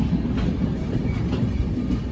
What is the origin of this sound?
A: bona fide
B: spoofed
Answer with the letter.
A